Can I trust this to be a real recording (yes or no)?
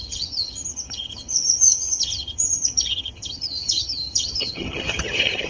no